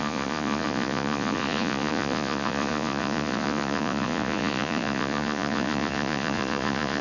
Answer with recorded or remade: remade